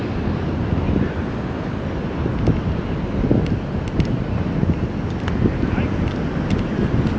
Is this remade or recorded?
recorded